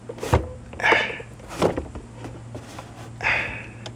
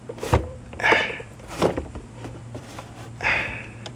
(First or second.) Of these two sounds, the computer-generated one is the second